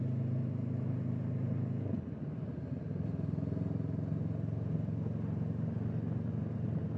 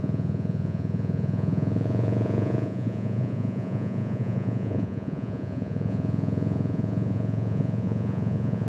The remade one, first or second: second